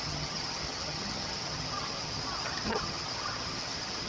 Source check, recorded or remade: remade